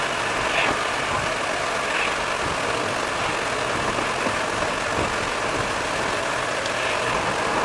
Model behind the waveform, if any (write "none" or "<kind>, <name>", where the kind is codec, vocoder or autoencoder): none